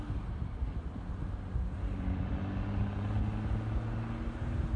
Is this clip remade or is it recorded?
recorded